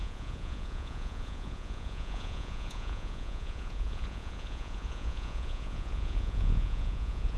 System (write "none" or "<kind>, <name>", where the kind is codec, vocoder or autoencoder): vocoder, Vocos